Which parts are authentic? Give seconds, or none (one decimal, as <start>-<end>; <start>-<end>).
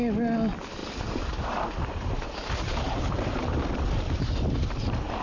0.0-0.8; 3.9-5.2